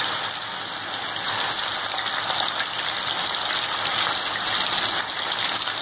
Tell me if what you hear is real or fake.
real